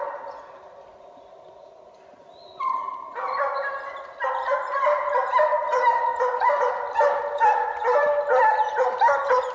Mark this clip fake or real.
real